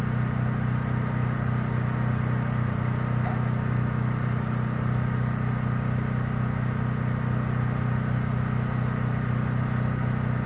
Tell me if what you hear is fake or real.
real